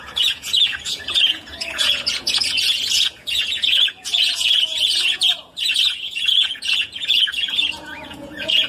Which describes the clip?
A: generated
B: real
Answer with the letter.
A